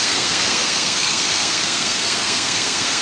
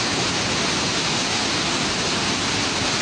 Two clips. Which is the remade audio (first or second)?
first